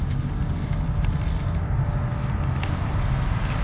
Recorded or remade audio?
recorded